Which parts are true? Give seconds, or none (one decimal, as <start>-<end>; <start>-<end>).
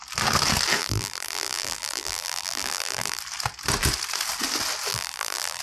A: 0.0-0.8; 3.2-4.9